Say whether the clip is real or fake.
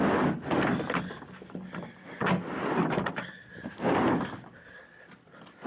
real